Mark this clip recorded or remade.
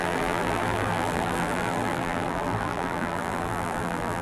remade